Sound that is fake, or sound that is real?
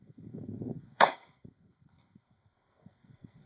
fake